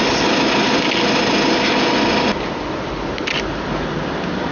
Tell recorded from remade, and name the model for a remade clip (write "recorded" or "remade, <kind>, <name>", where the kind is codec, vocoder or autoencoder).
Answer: recorded